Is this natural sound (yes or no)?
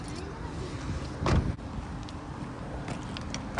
yes